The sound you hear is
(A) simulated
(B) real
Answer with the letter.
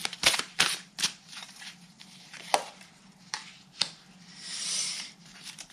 A